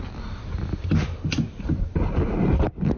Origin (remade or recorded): recorded